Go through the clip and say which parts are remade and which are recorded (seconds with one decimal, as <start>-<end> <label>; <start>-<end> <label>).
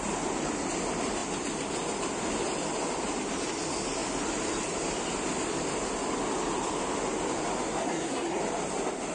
0.0-7.7 recorded; 7.7-8.4 remade; 8.4-9.1 recorded